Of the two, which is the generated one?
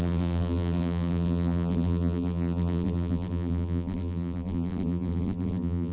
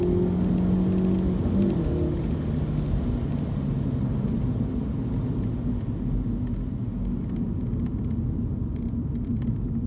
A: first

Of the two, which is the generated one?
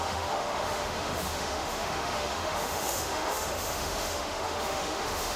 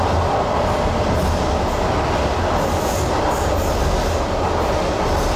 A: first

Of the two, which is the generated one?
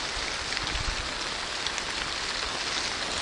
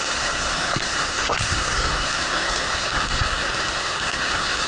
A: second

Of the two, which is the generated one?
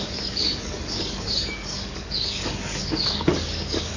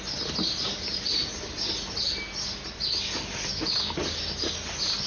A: first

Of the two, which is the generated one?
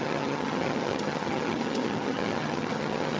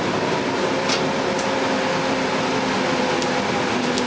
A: first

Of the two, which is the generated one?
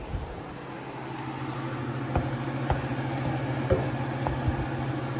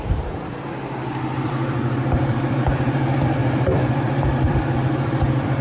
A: second